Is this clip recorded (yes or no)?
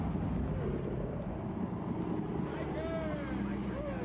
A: yes